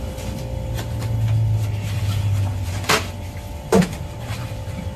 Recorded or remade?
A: remade